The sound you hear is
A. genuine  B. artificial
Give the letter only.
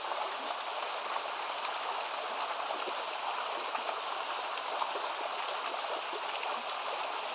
A